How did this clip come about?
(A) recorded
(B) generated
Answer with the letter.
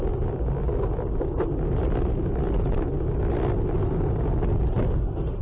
A